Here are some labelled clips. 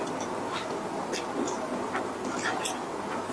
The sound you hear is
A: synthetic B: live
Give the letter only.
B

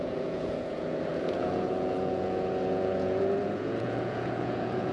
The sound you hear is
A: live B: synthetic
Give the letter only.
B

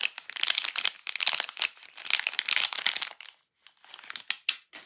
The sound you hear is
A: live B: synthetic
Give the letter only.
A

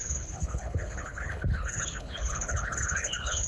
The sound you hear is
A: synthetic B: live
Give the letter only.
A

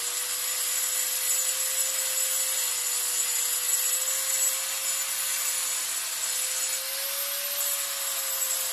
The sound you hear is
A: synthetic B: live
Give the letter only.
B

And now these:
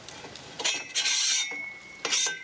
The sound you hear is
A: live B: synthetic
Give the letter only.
A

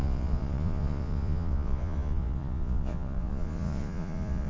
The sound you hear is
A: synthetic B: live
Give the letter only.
A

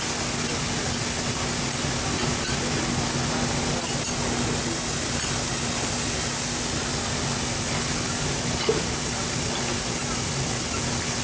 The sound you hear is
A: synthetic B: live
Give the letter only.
B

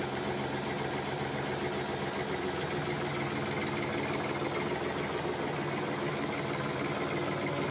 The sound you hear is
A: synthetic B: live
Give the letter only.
B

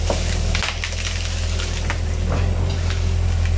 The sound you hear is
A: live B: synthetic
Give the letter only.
A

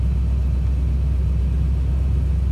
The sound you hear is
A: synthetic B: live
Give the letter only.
B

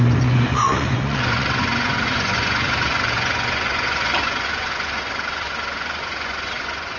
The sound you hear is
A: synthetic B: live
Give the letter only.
A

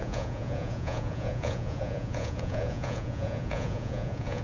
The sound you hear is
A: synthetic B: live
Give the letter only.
A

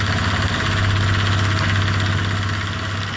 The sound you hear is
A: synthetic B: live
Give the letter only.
B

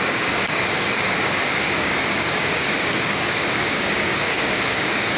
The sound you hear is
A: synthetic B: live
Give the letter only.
A